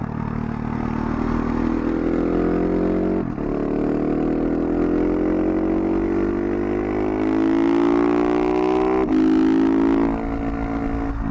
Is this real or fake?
real